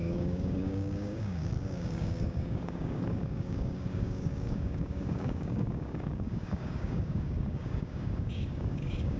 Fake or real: fake